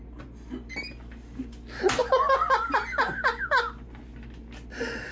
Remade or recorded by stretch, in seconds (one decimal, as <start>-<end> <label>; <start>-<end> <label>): 0.0-5.1 recorded